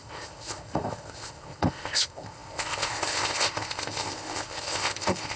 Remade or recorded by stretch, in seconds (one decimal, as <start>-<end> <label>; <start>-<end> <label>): 0.0-5.4 remade